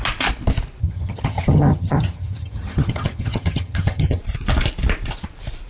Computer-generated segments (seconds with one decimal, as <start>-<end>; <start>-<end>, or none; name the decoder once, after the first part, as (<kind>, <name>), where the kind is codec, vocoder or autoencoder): 0.8-4.2 (vocoder, HiFi-GAN)